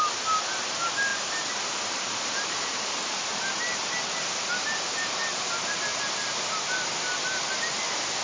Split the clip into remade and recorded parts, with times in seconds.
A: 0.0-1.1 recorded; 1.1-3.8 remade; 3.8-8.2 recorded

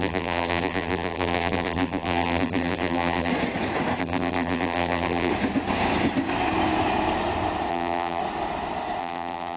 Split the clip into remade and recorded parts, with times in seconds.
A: 0.0-3.3 remade; 3.3-4.0 recorded; 4.0-5.3 remade; 5.3-7.7 recorded; 7.7-8.2 remade; 8.2-9.0 recorded; 9.0-9.6 remade